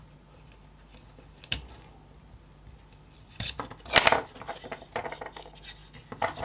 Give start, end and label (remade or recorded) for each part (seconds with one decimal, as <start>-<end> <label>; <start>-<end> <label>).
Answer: 0.0-6.4 recorded